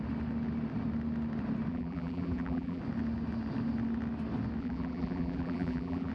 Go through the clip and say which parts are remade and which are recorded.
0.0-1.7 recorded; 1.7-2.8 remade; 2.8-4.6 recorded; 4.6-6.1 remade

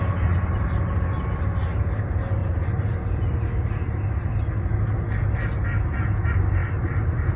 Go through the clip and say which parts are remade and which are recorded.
0.0-2.4 recorded; 2.4-4.0 remade; 4.0-7.4 recorded

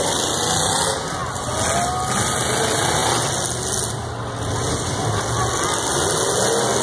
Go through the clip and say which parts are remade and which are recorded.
0.0-6.8 recorded

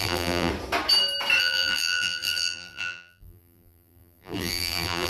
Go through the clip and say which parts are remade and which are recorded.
0.0-0.5 remade; 0.5-1.4 recorded; 1.4-5.1 remade

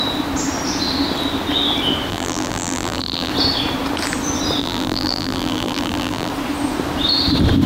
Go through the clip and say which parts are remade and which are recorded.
0.0-2.1 recorded; 2.1-3.3 remade; 3.3-4.6 recorded; 4.6-6.3 remade; 6.3-7.7 recorded

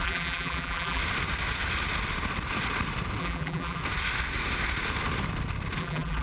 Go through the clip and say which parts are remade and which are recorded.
0.0-1.0 remade; 1.0-3.2 recorded; 3.2-3.8 remade; 3.8-5.8 recorded; 5.8-6.2 remade